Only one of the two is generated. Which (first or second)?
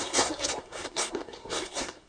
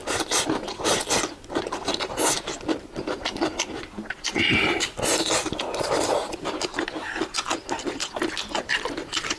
first